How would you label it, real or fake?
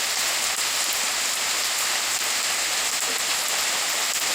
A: real